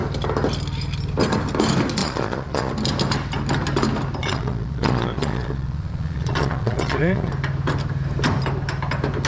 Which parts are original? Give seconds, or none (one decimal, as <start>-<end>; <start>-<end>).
0.0-2.0; 2.7-4.2; 7.3-9.3

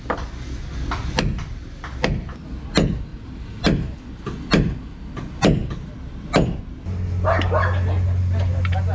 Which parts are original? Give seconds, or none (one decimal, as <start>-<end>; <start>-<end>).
0.0-3.1; 4.2-5.6; 6.6-8.9

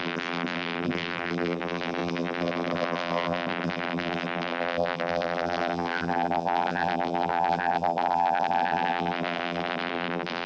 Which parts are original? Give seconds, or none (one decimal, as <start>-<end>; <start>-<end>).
none